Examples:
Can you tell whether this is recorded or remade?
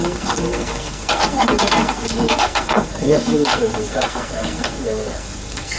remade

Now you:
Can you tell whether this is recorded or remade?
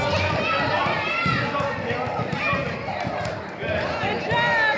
recorded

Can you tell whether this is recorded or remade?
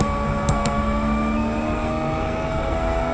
remade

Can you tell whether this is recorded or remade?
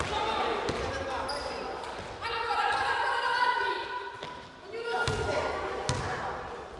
recorded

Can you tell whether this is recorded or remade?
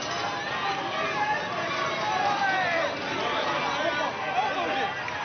recorded